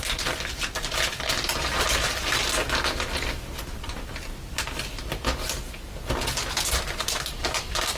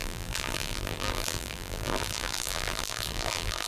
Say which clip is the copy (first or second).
second